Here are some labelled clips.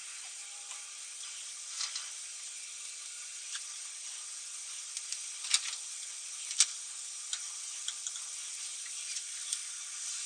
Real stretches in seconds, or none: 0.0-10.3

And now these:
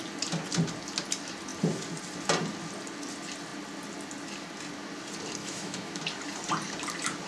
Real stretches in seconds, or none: 0.0-5.4; 6.0-7.3

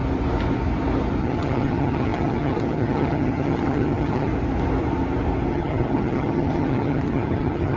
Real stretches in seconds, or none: 0.0-1.2; 4.3-5.5